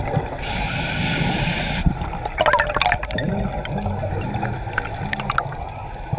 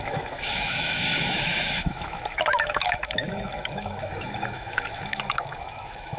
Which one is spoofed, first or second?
second